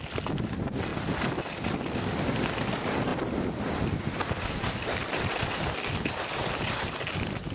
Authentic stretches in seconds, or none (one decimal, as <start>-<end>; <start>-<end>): 0.0-7.5